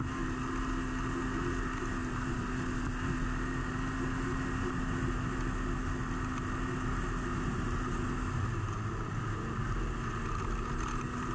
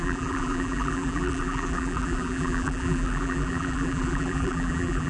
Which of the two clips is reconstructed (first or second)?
second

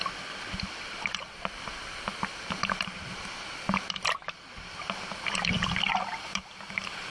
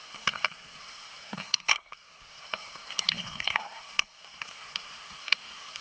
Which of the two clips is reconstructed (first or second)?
second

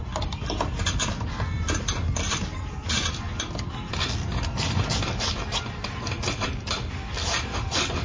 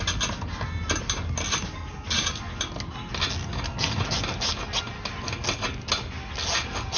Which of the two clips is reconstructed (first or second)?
first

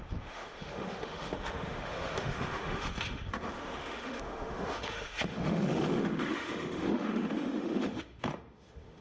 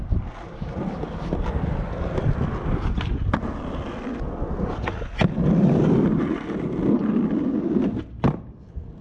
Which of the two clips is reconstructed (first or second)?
first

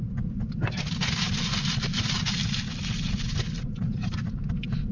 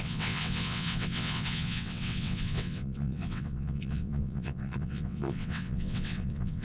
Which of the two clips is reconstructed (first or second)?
second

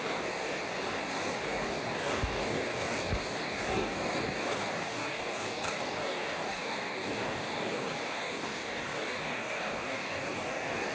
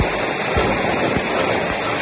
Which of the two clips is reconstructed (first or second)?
first